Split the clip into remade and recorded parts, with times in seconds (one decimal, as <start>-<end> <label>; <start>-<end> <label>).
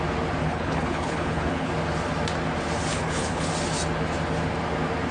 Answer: 0.0-0.4 recorded; 0.4-1.7 remade; 1.7-2.9 recorded; 2.9-3.5 remade; 3.5-5.1 recorded